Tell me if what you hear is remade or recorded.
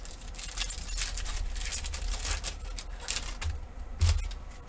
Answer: recorded